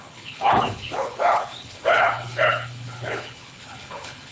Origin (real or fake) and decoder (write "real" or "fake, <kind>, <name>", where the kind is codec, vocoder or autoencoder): fake, codec, HILCodec